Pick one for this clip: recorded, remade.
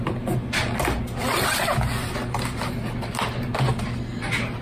recorded